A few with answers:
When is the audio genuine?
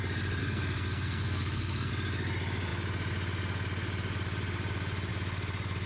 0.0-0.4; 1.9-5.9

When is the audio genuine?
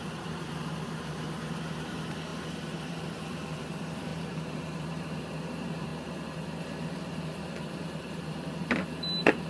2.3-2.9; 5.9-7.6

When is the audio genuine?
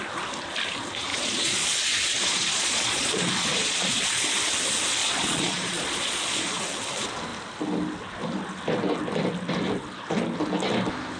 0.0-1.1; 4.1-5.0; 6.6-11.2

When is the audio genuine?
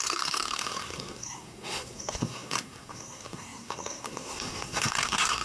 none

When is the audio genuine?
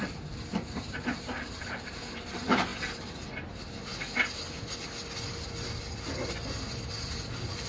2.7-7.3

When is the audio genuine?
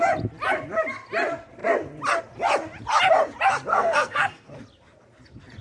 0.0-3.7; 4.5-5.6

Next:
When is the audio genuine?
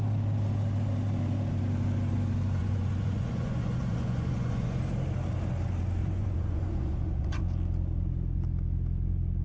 0.0-2.6; 4.8-6.0; 7.4-9.4